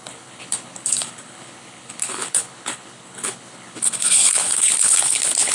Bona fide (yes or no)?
no